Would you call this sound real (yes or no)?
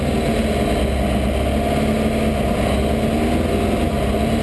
yes